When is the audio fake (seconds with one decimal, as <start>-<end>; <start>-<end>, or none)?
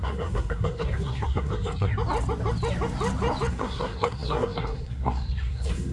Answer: 0.0-1.9; 3.5-5.9